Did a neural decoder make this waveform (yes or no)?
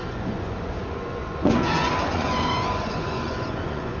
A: yes